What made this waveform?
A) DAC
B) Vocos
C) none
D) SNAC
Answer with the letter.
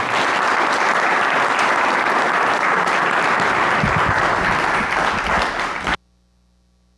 C